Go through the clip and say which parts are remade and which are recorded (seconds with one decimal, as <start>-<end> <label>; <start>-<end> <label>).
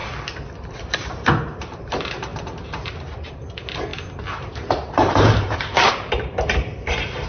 0.0-0.8 recorded; 0.8-3.9 remade; 3.9-4.5 recorded; 4.5-7.3 remade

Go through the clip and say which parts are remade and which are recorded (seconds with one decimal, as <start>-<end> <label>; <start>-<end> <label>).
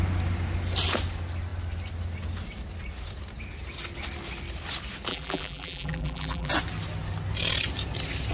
0.0-5.1 recorded; 5.1-6.5 remade; 6.5-8.3 recorded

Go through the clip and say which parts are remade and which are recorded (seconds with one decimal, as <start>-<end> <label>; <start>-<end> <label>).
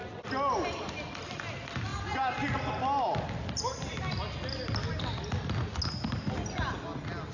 0.0-7.3 recorded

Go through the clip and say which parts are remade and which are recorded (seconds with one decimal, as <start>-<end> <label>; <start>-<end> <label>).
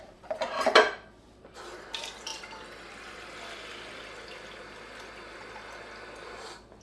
0.0-2.3 remade; 2.3-6.8 recorded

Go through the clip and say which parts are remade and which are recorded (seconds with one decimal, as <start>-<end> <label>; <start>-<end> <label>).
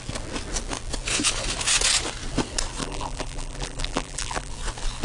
0.0-2.8 recorded; 2.8-4.5 remade; 4.5-5.0 recorded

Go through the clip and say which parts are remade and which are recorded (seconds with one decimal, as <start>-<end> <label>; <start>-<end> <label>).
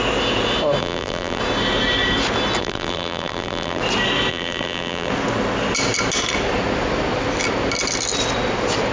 0.0-0.8 recorded; 0.8-1.4 remade; 1.4-2.6 recorded; 2.6-3.8 remade; 3.8-4.3 recorded; 4.3-5.1 remade; 5.1-8.9 recorded